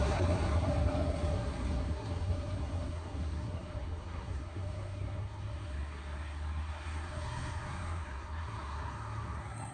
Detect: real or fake fake